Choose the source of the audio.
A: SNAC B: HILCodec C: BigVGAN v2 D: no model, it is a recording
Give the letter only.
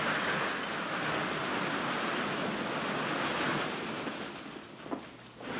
D